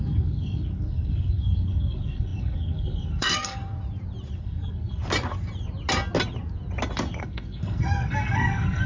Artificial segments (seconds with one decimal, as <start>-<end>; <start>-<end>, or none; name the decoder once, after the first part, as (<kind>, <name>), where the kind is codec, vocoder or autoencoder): 0.0-3.6 (codec, SNAC); 4.4-5.0; 7.2-8.9